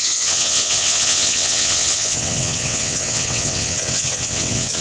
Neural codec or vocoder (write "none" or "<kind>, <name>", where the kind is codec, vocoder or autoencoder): vocoder, WaveNeXt